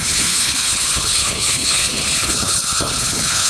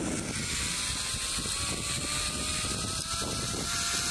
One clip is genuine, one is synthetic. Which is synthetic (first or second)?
first